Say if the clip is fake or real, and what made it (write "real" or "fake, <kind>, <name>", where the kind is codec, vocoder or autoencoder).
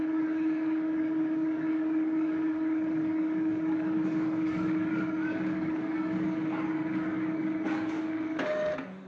fake, codec, DAC